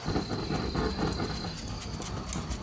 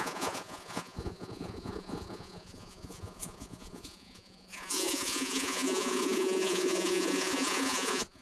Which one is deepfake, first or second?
second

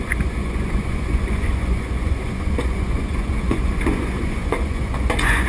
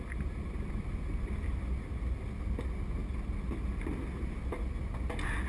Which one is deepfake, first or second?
first